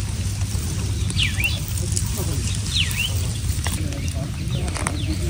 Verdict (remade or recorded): recorded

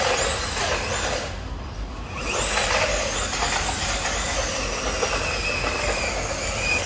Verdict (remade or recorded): recorded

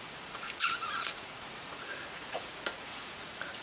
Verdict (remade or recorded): remade